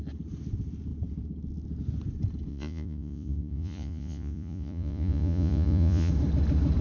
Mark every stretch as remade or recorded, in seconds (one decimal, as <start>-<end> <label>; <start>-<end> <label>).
0.0-2.5 recorded; 2.5-6.1 remade; 6.1-6.8 recorded